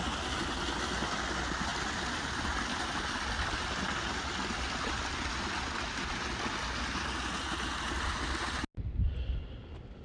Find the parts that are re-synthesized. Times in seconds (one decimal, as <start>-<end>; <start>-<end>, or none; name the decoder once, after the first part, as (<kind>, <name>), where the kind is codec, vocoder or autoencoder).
none